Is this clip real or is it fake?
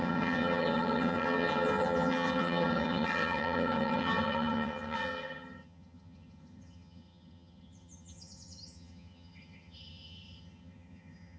fake